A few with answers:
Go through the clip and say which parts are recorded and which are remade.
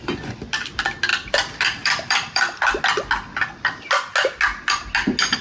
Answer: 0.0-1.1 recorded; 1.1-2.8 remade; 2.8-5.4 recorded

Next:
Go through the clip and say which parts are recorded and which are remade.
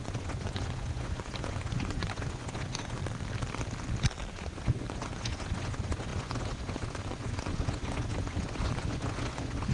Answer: 0.0-3.0 remade; 3.0-4.3 recorded; 4.3-9.7 remade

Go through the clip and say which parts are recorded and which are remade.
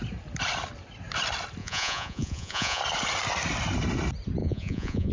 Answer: 0.0-1.6 recorded; 1.6-2.8 remade; 2.8-4.4 recorded; 4.4-5.1 remade